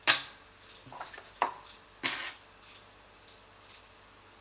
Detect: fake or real real